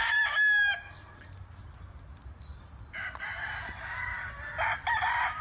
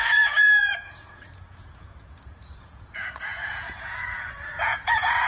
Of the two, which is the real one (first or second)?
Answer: first